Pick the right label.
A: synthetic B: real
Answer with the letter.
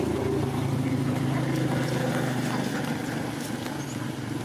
B